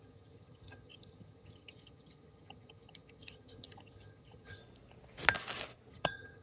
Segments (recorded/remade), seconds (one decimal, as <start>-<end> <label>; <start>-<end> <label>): 0.0-4.6 remade; 4.6-5.9 recorded; 5.9-6.4 remade